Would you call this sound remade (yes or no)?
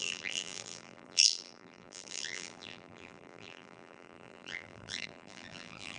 yes